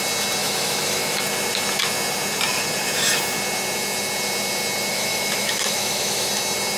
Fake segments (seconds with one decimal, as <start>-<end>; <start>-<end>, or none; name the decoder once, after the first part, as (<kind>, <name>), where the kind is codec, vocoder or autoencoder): 0.4-1.2 (autoencoder, DAC-VAE); 4.9-6.3